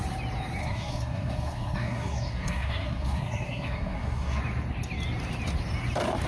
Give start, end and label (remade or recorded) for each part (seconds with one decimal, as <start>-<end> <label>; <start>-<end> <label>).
0.0-0.6 recorded; 0.6-4.4 remade; 4.4-6.3 recorded